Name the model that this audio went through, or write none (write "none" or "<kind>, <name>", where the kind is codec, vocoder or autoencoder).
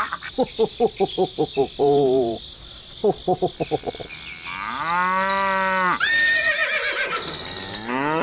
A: none